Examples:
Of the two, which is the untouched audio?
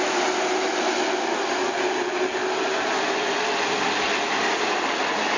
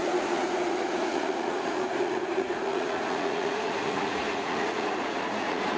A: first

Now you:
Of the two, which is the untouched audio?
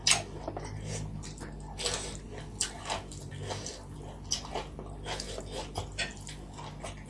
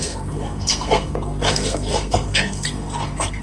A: first